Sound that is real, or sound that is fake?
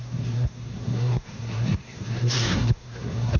fake